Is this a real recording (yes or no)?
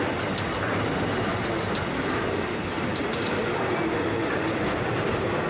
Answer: yes